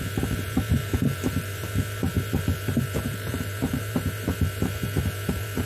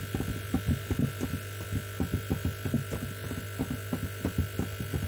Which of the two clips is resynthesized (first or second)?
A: first